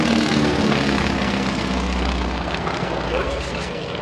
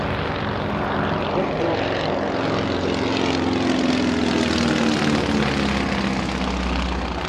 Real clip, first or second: second